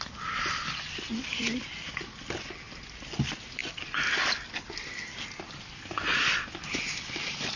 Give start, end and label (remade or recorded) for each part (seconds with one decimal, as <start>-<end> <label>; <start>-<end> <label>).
0.0-7.6 recorded